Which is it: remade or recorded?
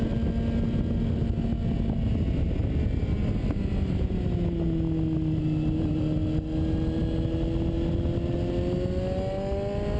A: recorded